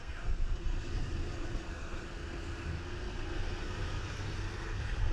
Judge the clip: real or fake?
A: fake